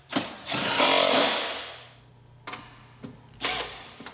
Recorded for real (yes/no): yes